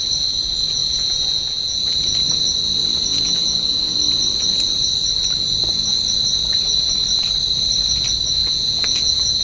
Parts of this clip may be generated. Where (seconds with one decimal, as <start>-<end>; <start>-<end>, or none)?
0.8-1.9; 3.1-3.9; 8.4-9.4